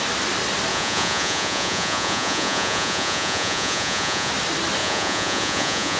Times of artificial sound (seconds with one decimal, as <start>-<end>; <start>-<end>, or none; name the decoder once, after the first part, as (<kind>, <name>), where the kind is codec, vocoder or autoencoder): 0.7-4.3 (vocoder, Vocos); 4.8-6.0